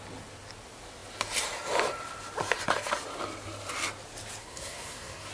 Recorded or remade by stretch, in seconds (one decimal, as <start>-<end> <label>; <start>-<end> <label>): 0.0-4.4 recorded; 4.4-5.3 remade